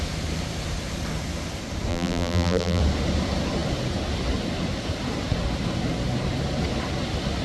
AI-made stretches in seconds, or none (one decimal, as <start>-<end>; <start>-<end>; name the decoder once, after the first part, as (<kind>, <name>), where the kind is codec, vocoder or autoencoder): 1.9-2.8 (vocoder, BigVGAN v2)